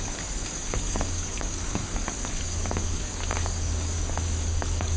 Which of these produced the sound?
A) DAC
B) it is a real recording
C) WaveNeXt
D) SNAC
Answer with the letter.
A